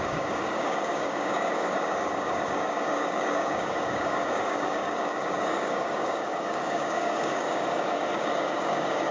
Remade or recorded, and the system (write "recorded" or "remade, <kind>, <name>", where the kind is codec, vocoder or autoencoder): remade, codec, DAC